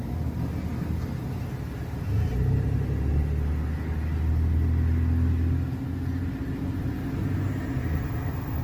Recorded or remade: recorded